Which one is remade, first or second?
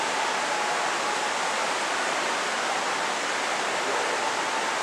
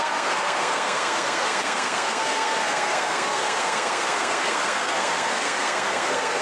second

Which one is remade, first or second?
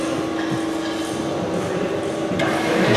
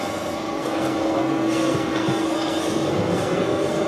second